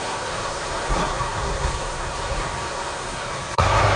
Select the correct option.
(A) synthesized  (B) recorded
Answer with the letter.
A